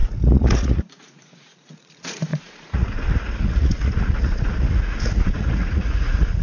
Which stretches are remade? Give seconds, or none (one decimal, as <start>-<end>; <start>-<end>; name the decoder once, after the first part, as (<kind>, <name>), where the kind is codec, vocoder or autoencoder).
0.0-6.4 (vocoder, Vocos)